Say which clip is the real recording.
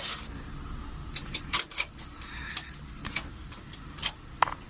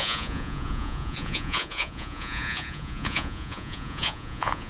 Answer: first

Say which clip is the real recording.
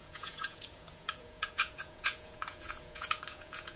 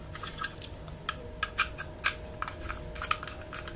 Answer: second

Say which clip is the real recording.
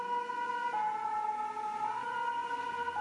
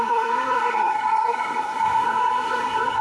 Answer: first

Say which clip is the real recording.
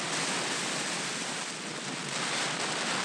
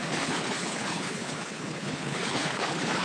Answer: first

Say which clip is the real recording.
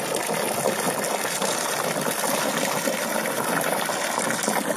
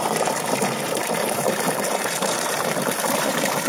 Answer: first